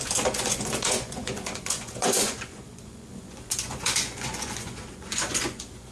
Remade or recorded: remade